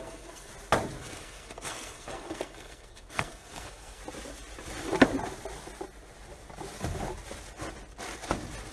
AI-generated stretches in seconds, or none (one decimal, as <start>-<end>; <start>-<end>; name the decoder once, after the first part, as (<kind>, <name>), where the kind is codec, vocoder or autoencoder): 0.0-0.5 (codec, SNAC); 1.0-4.0